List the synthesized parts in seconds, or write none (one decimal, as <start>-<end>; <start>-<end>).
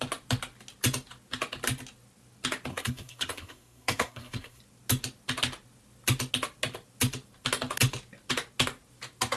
2.7-4.6